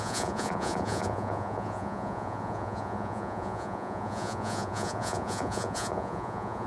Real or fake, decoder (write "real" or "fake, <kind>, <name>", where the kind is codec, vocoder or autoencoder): fake, vocoder, Vocos